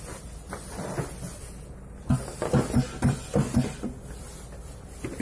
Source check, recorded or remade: recorded